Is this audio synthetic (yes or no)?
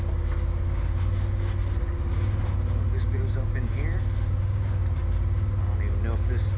no